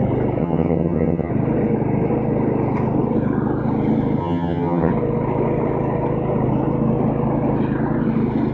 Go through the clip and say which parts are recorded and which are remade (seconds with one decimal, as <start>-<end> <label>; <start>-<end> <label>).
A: 0.0-0.4 recorded; 0.4-1.3 remade; 1.3-4.2 recorded; 4.2-4.9 remade; 4.9-8.5 recorded